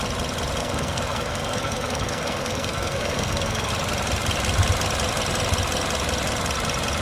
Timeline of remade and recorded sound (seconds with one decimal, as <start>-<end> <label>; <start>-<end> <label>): 0.0-0.6 recorded; 0.6-3.7 remade; 3.7-7.0 recorded